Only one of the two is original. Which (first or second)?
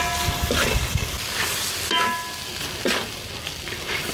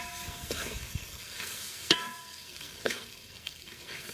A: first